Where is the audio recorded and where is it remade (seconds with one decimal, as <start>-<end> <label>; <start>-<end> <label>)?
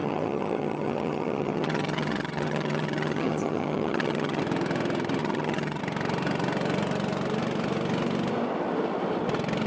0.0-4.4 remade; 4.4-5.2 recorded; 5.2-5.8 remade; 5.8-9.7 recorded